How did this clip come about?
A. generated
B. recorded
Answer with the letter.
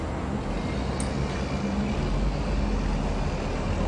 B